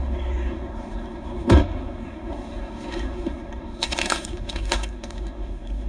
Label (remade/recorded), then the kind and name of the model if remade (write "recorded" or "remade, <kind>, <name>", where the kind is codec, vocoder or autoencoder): remade, codec, SNAC